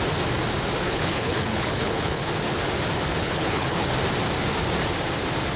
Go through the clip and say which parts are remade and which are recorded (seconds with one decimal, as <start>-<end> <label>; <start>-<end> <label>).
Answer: 0.0-0.8 recorded; 0.8-2.3 remade; 2.3-3.2 recorded; 3.2-3.9 remade; 3.9-5.6 recorded